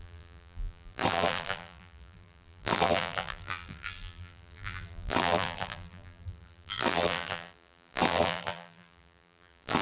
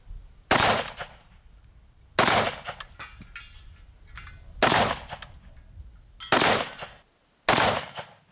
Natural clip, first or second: second